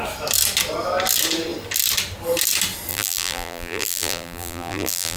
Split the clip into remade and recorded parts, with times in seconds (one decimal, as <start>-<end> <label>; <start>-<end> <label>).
0.0-2.9 recorded; 2.9-5.2 remade